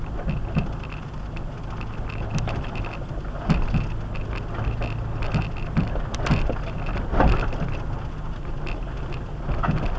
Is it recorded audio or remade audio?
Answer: recorded